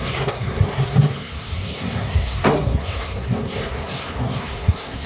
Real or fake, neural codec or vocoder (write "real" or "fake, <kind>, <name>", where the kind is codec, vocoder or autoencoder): fake, codec, SNAC